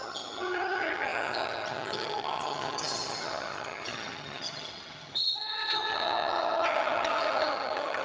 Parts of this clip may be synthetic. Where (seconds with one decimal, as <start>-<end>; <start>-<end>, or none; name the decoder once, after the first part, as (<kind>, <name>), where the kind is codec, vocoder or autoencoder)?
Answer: 0.0-8.0 (vocoder, HiFi-GAN)